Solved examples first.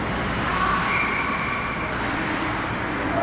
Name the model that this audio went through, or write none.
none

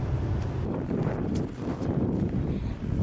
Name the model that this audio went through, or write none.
none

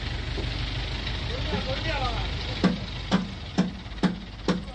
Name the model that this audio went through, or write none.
none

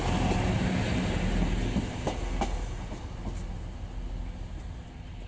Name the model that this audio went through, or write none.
none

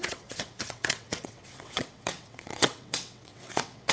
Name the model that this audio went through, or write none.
vocoder, WaveNeXt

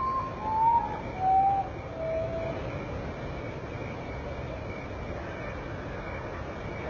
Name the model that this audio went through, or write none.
none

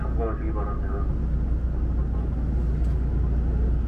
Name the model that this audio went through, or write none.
none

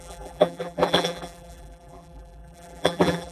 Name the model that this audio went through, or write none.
vocoder, BigVGAN v2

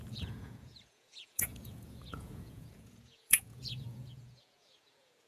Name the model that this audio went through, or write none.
vocoder, Vocos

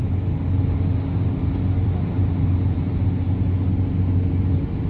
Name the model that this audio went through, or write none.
none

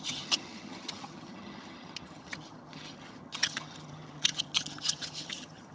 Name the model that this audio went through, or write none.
vocoder, HiFi-GAN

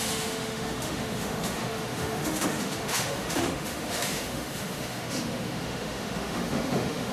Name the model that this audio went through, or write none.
autoencoder, DAC-VAE